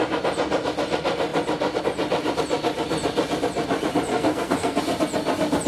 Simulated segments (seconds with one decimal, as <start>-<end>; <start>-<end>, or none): 4.1-4.8